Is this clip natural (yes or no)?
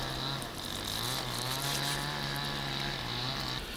yes